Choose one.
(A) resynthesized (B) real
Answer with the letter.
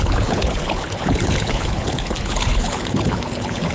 A